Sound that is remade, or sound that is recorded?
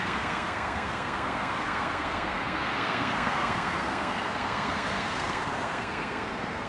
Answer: remade